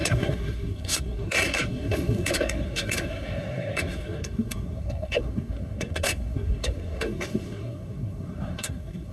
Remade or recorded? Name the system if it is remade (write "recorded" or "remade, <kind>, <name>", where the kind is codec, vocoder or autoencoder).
remade, codec, SNAC